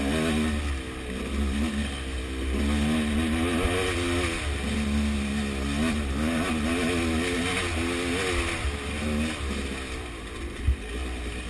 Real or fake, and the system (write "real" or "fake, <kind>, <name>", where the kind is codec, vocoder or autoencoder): real